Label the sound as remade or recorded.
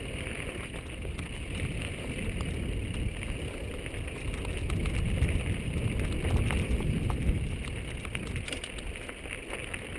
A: recorded